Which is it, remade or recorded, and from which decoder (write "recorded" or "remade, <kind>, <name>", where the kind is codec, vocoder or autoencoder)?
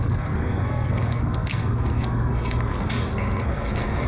remade, codec, SNAC